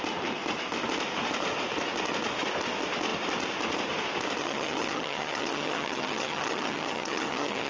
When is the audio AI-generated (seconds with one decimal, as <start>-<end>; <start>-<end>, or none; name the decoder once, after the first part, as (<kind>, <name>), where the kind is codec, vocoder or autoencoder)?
4.4-7.7 (vocoder, HiFi-GAN)